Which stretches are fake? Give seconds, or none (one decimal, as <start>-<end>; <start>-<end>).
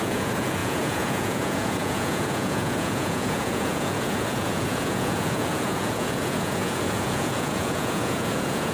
0.0-8.7